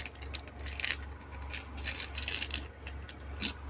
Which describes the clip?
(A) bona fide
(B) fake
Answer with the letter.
A